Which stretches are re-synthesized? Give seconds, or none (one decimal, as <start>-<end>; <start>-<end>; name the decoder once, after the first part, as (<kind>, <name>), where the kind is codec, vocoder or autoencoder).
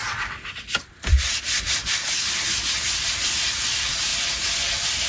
0.0-4.1 (vocoder, BigVGAN v2)